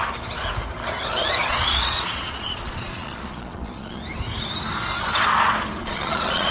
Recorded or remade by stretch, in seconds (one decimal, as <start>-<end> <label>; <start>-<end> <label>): 0.0-1.4 recorded; 1.4-4.0 remade; 4.0-5.8 recorded; 5.8-6.5 remade